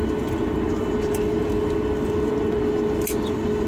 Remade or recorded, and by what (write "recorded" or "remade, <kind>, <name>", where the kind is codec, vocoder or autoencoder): recorded